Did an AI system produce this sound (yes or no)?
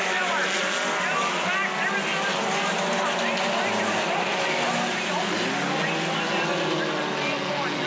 no